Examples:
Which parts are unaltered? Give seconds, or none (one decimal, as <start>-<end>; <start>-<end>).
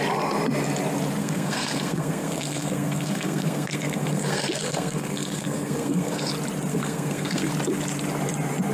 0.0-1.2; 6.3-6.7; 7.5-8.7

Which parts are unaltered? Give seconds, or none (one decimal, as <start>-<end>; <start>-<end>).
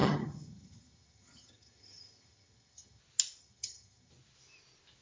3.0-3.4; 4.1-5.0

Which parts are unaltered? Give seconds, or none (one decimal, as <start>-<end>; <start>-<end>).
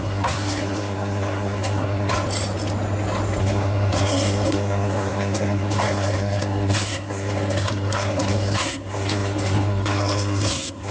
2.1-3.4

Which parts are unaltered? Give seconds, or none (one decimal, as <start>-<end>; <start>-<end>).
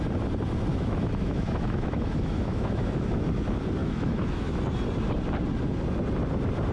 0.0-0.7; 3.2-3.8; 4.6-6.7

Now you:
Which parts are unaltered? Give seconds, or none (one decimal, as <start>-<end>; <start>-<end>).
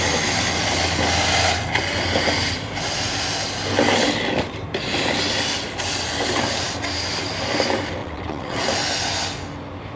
0.0-8.0; 8.6-10.0